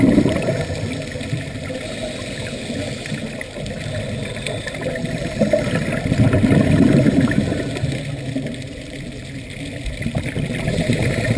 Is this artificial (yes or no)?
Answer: no